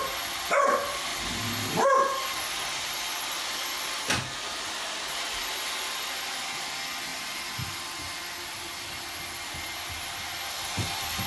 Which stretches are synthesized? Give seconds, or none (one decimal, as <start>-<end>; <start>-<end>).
7.1-7.8